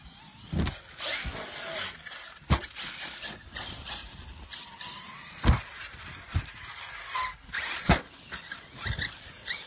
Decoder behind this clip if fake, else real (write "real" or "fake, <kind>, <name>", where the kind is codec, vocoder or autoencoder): real